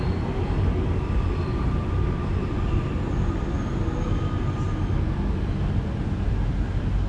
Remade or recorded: recorded